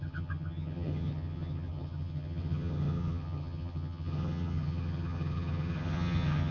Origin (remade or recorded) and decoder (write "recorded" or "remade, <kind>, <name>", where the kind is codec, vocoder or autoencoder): remade, vocoder, HiFi-GAN